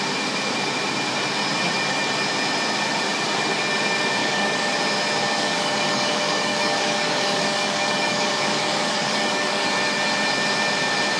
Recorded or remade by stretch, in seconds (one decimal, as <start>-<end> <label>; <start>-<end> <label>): 0.0-4.2 recorded; 4.2-4.8 remade; 4.8-5.2 recorded; 5.2-9.6 remade; 9.6-11.2 recorded